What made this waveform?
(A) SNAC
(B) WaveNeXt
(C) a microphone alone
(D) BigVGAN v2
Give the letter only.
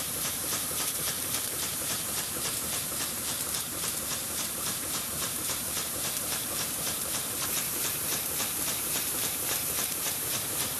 D